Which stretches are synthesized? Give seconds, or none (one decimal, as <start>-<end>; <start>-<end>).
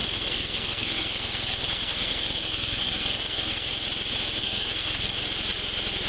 0.0-3.7; 4.4-5.2